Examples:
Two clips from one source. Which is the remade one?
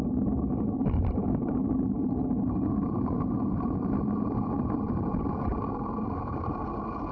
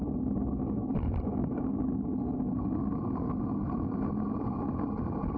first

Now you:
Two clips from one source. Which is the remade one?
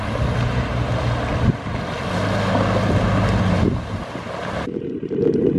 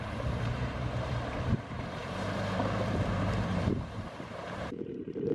second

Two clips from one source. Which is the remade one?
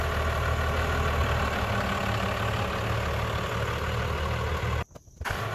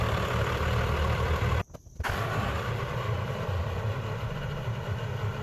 second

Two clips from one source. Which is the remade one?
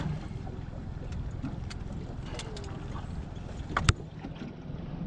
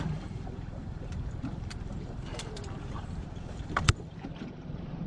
second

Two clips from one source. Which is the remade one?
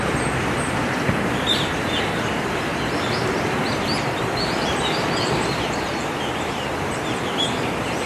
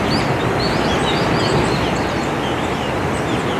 first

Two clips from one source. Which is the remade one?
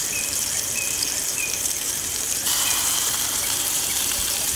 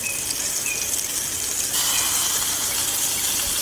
first